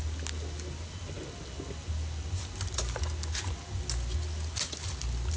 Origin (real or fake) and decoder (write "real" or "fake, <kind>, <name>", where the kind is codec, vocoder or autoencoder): real